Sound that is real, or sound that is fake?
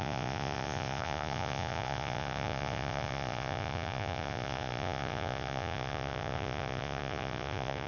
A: fake